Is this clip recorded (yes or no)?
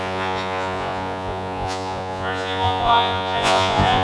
no